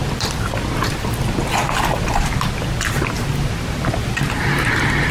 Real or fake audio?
real